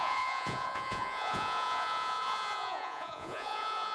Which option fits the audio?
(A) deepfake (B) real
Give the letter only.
A